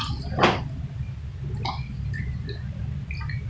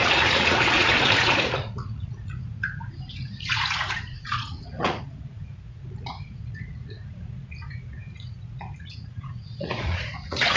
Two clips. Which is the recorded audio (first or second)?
first